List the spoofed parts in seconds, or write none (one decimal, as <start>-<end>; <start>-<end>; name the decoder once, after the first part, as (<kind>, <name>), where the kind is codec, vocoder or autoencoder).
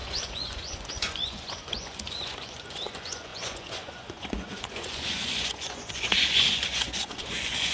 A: 0.0-7.7 (vocoder, Vocos)